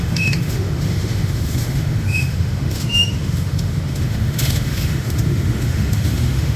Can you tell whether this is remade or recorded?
remade